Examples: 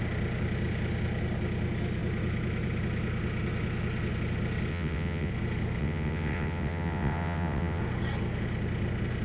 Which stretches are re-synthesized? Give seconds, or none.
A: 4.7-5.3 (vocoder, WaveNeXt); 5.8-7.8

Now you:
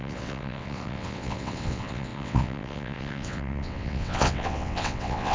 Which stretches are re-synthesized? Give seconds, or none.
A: 0.0-5.3 (vocoder, WaveNeXt)

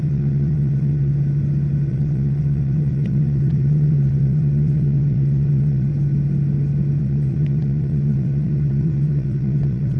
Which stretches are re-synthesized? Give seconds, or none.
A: 0.0-1.1 (vocoder, WaveNeXt); 1.9-5.9; 7.0-10.0

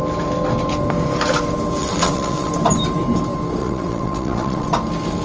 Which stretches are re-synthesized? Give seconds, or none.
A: 1.8-2.5 (vocoder, WaveNeXt); 3.6-4.7